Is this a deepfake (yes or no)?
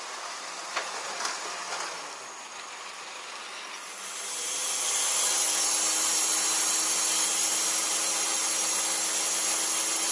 no